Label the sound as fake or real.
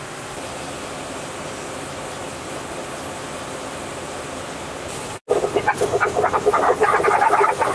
real